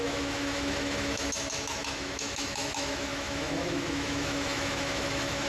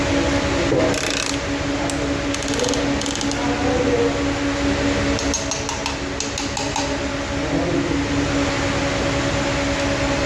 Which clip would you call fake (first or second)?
first